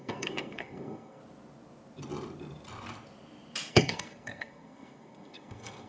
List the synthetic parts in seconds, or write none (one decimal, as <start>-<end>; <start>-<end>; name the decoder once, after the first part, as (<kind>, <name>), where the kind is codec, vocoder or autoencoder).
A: 0.0-1.2 (codec, SNAC); 3.7-5.9